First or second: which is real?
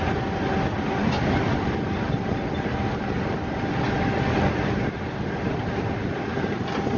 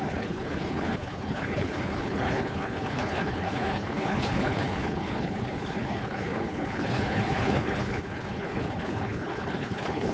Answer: first